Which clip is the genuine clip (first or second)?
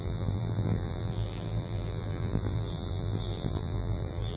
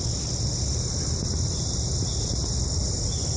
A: second